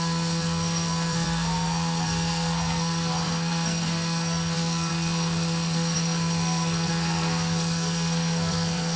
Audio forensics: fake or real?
fake